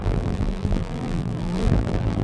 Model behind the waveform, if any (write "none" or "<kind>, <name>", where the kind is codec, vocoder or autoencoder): vocoder, BigVGAN v2